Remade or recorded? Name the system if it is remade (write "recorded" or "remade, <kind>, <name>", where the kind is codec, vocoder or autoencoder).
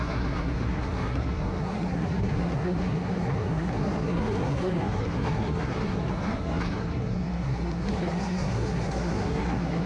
remade, codec, SNAC